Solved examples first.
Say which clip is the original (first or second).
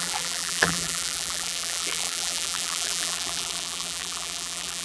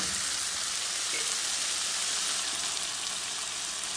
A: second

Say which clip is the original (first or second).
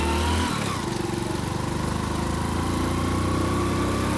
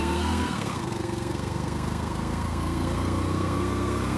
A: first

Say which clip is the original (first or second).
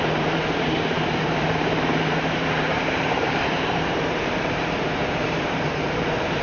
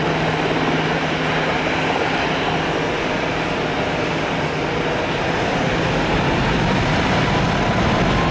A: second